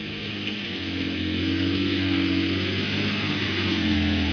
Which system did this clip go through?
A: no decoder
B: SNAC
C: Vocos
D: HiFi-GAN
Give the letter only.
B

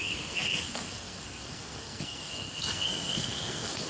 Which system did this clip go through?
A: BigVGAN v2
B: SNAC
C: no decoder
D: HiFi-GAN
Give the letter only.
B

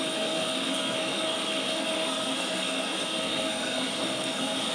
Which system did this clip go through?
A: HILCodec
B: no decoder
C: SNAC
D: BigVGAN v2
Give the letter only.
C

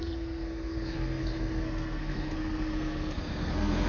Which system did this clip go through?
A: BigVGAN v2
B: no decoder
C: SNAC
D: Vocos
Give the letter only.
C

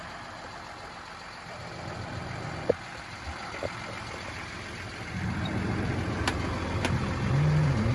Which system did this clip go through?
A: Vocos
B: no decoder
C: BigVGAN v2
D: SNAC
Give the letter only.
B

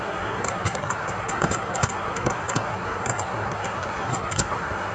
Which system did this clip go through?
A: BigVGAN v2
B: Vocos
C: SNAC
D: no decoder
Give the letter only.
C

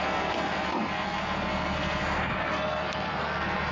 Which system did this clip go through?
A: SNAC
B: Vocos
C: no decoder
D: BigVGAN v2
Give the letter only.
A